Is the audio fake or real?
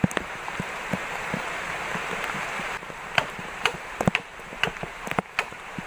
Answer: fake